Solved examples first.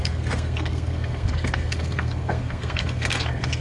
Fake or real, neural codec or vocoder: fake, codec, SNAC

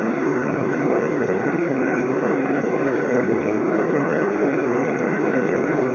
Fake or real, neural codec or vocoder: fake, codec, SNAC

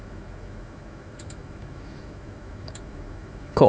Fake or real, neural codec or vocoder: fake, autoencoder, DAC-VAE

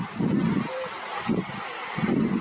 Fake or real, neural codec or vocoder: real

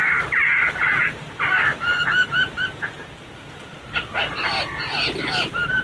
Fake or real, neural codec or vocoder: real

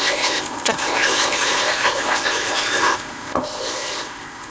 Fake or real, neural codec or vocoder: fake, codec, ZipCodec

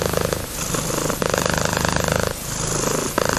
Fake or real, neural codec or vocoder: real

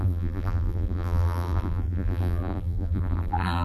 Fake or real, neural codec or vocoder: fake, vocoder, BigVGAN v2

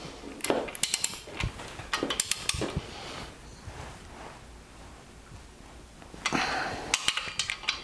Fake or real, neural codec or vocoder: real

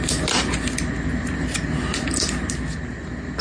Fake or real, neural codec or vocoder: real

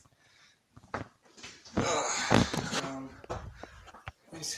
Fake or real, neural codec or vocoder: real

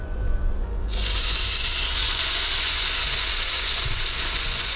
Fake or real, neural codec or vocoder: fake, vocoder, Vocos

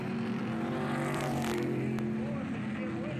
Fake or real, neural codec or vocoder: real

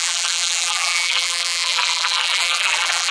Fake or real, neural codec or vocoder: fake, vocoder, BigVGAN v2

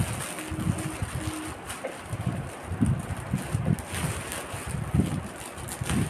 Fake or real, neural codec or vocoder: real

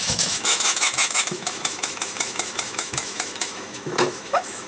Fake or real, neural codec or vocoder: fake, autoencoder, DAC-VAE